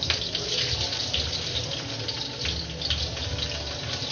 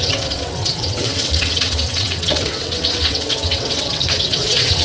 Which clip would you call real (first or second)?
first